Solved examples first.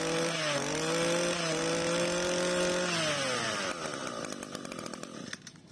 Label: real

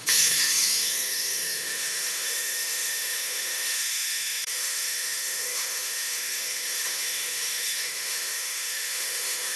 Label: fake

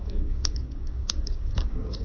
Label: fake